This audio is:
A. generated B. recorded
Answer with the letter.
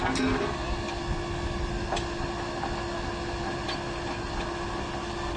B